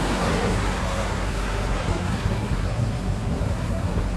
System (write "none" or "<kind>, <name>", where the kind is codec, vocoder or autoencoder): codec, SNAC